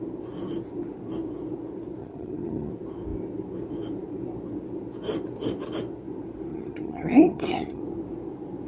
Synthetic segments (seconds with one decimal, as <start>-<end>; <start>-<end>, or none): 2.0-2.7; 6.5-7.8

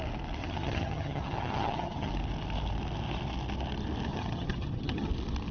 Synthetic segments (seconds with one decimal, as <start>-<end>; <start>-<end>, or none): 0.4-2.1; 4.1-5.1

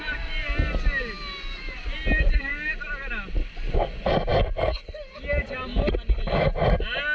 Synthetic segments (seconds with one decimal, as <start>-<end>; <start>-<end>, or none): none

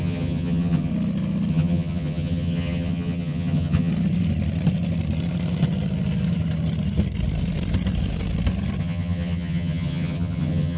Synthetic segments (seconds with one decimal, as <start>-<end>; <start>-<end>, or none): 0.0-0.9; 1.5-3.9; 8.8-10.8

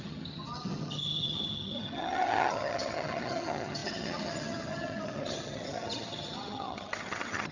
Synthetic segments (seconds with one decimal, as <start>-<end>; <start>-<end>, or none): 0.0-7.5

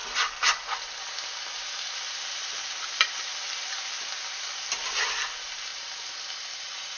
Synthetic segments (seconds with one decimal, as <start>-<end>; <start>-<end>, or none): none